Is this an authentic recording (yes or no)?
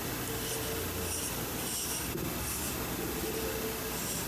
yes